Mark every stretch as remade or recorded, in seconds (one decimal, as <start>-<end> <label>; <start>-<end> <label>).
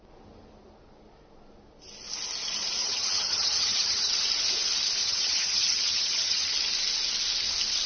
0.0-2.8 recorded; 2.8-4.1 remade; 4.1-5.0 recorded; 5.0-6.5 remade; 6.5-7.9 recorded